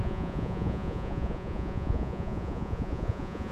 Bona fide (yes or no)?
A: no